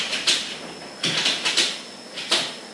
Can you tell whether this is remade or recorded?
recorded